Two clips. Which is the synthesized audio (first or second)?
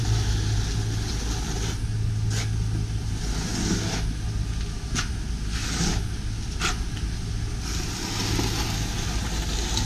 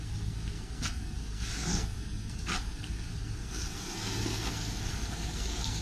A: second